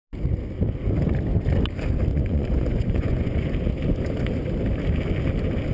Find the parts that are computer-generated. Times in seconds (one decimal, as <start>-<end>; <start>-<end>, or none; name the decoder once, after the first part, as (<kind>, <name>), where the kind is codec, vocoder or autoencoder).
2.1-3.5 (vocoder, Vocos)